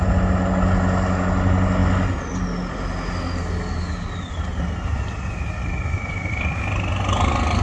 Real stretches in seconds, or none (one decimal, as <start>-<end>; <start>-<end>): 0.0-7.6